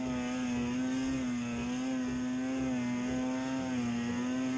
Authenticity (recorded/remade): recorded